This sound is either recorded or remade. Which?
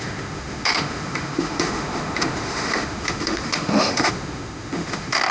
remade